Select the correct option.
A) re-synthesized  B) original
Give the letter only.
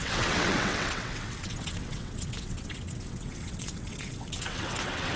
A